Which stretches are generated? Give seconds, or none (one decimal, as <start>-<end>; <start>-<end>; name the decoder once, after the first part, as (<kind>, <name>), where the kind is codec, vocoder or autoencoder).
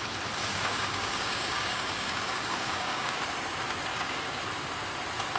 0.5-3.2 (codec, DAC); 3.9-4.4